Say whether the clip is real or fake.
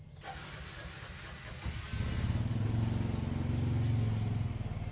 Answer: real